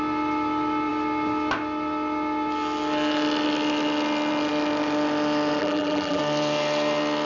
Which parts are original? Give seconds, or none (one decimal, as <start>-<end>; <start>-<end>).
0.0-5.6; 6.2-7.3